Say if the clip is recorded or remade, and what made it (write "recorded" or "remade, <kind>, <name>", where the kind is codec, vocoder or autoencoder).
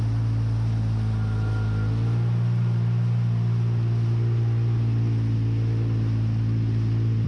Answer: recorded